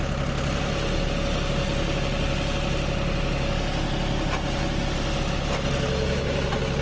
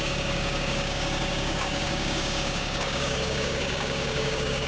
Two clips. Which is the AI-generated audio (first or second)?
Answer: second